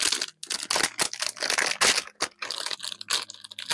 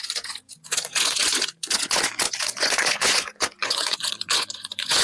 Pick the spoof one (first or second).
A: second